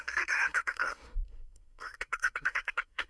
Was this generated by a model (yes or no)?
yes